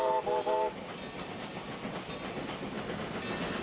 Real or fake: real